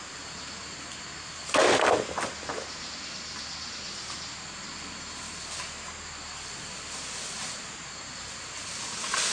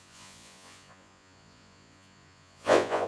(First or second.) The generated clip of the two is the second